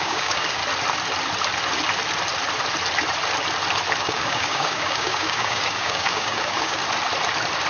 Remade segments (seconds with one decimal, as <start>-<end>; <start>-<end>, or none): 0.0-0.6; 4.0-6.8